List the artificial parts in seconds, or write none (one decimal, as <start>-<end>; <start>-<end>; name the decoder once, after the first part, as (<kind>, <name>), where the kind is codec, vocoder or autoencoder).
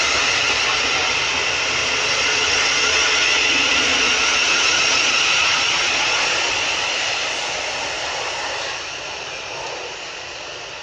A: 1.8-6.7 (vocoder, Vocos)